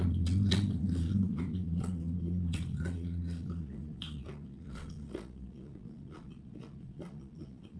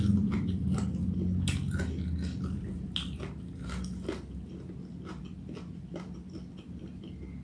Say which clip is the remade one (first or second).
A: first